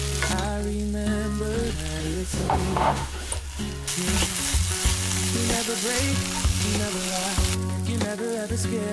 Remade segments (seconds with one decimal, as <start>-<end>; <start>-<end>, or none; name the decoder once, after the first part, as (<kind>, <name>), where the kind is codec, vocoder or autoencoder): 2.0-3.3 (autoencoder, DAC-VAE)